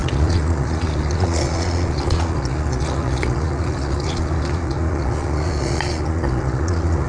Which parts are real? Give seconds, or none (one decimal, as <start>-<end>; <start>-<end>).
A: none